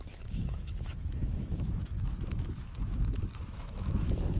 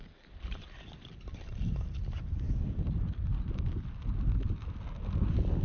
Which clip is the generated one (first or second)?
first